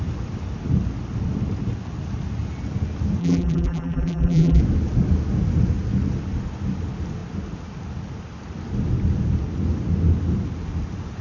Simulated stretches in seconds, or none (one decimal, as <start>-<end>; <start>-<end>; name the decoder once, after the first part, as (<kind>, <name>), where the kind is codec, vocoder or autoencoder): 3.2-4.6 (vocoder, BigVGAN v2)